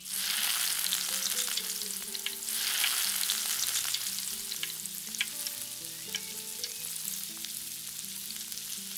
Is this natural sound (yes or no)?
yes